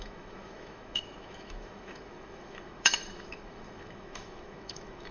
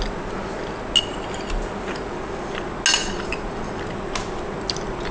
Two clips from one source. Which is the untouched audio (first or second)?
second